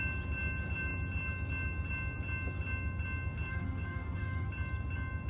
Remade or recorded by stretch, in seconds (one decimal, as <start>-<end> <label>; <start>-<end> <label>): 0.0-3.5 recorded; 3.5-4.5 remade; 4.5-5.3 recorded